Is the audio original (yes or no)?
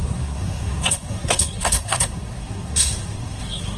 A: no